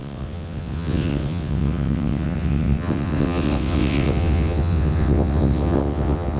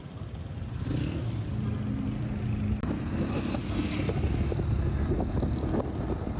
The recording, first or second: second